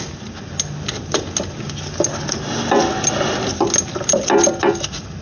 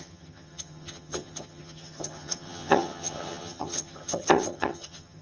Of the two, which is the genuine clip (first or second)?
first